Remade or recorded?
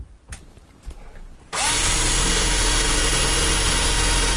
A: remade